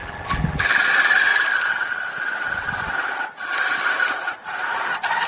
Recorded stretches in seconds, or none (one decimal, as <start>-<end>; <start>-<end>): 0.8-5.3